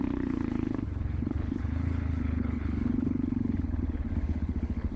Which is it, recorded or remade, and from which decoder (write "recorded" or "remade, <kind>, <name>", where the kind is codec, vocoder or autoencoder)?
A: remade, codec, HILCodec